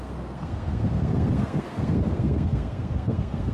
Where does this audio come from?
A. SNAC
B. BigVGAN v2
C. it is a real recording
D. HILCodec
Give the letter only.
A